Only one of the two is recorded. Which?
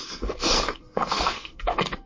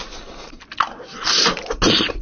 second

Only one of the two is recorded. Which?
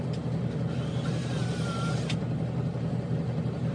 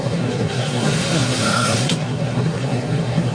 first